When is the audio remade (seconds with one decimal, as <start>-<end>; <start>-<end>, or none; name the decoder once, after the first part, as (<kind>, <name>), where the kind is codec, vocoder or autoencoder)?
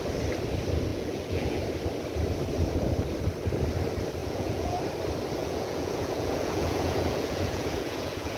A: 0.9-1.6 (vocoder, Vocos); 4.2-4.8; 5.4-8.4